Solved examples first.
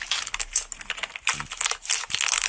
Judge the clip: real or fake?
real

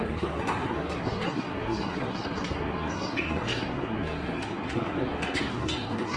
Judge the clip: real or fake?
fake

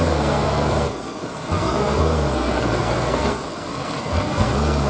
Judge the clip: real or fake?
fake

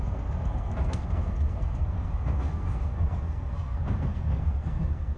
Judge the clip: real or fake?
fake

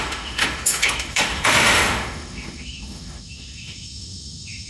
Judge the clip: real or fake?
fake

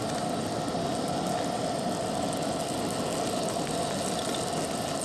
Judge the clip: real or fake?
real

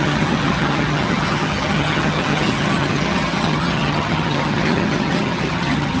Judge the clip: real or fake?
fake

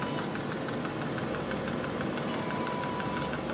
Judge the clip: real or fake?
real